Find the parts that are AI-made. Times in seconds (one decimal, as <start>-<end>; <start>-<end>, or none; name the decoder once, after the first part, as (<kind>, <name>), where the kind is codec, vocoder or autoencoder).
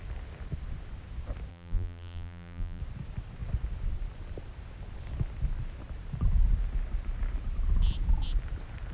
1.5-2.8 (vocoder, BigVGAN v2)